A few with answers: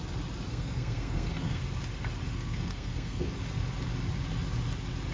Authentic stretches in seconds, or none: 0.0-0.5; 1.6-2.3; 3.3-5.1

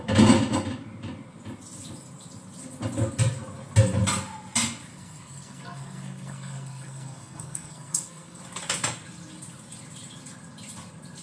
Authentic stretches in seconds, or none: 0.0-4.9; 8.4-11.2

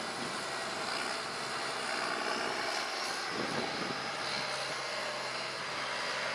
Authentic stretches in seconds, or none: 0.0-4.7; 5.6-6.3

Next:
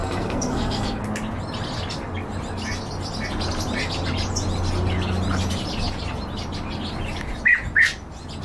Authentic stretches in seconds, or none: 1.0-8.4

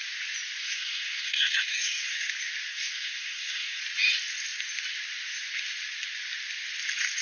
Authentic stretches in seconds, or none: 0.0-0.6; 2.3-2.7; 3.8-7.2

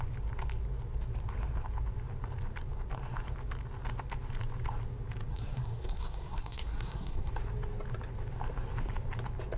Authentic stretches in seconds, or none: 0.0-5.3; 7.3-9.6

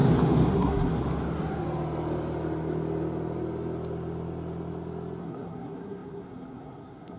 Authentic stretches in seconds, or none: 0.0-0.5; 0.9-5.2